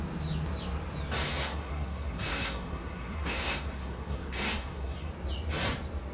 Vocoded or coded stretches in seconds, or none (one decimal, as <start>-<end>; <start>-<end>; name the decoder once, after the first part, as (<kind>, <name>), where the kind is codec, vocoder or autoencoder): 1.4-5.1 (codec, SNAC)